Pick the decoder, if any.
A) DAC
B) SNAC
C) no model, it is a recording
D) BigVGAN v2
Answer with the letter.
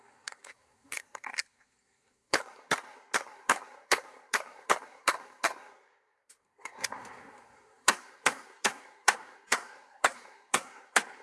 B